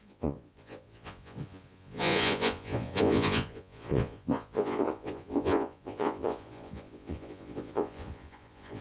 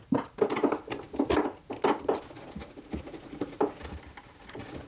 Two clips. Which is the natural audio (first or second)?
second